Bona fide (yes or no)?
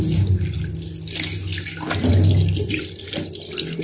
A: yes